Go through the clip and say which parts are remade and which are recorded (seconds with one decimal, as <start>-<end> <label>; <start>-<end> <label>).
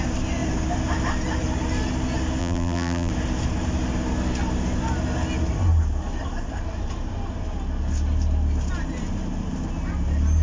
0.0-2.4 recorded; 2.4-3.1 remade; 3.1-10.4 recorded